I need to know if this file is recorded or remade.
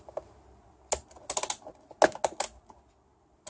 recorded